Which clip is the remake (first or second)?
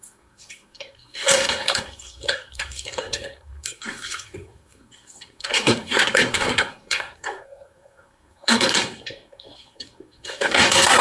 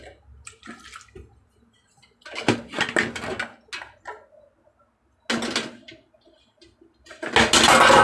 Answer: first